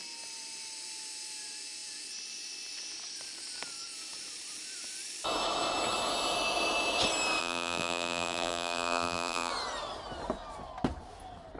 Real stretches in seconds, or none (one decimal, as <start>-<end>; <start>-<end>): 0.0-7.4; 9.5-11.6